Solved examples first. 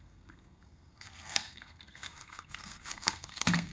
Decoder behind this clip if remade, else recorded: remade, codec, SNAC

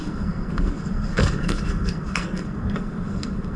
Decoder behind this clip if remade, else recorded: remade, codec, SNAC